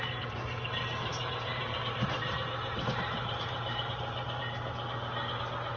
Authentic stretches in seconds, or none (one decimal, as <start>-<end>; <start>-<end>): 0.0-1.1; 4.4-5.8